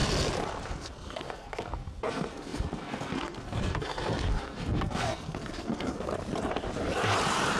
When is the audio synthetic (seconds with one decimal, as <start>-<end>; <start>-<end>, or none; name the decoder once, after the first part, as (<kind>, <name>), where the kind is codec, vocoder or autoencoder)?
0.7-6.1 (codec, SNAC)